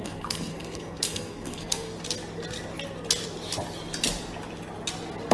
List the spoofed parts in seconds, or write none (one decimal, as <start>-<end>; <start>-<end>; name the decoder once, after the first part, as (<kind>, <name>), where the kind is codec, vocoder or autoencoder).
0.0-1.9 (codec, SNAC)